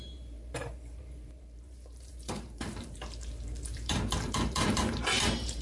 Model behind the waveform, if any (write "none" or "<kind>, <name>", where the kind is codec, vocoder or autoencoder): vocoder, BigVGAN v2